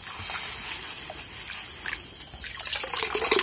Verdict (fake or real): real